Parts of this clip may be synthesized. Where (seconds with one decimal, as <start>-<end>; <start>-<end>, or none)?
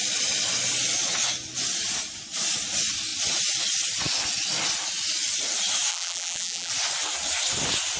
5.9-6.7